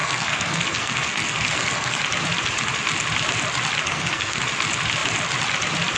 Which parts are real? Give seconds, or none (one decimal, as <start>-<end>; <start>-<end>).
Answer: 2.0-3.8; 4.4-6.0